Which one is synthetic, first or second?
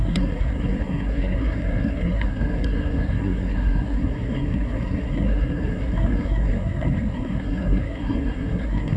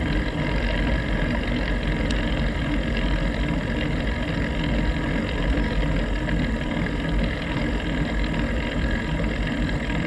first